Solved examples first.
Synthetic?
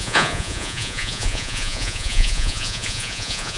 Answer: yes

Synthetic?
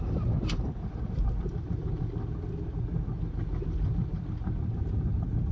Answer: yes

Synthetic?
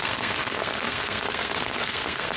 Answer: yes